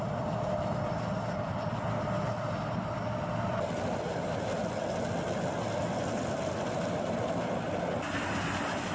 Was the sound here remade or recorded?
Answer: recorded